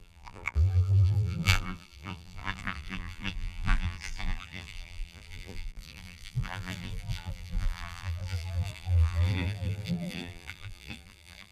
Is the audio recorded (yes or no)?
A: no